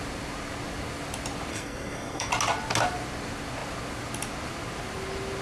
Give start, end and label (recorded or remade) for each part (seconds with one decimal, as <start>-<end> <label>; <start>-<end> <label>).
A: 0.0-1.5 recorded; 1.5-2.3 remade; 2.3-5.4 recorded